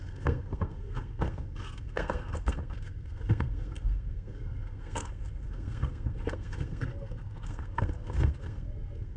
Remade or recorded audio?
remade